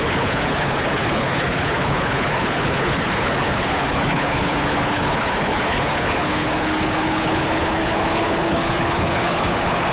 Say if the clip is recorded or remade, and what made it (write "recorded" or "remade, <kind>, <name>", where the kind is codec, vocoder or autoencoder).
remade, codec, HILCodec